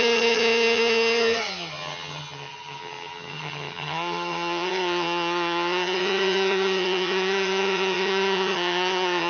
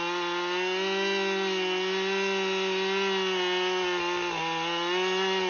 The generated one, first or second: first